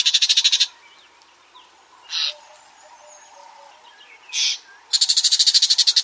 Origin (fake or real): real